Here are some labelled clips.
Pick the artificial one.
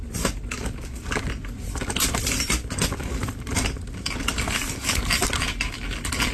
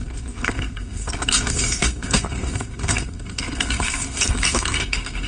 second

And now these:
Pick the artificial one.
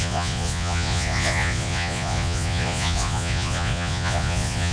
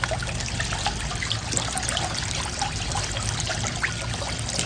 first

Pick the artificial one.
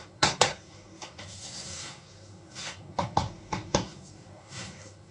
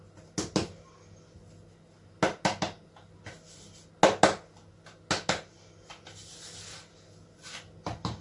first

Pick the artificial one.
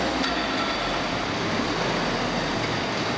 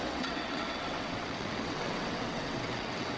second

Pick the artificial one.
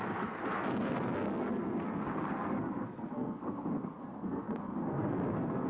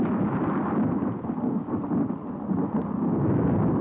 first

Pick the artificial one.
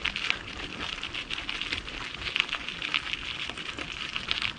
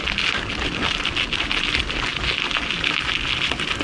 first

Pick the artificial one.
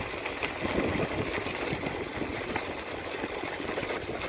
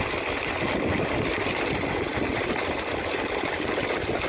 second